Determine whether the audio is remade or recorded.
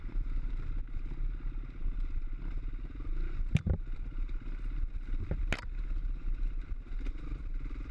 recorded